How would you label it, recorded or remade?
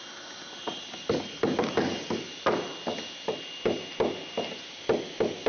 recorded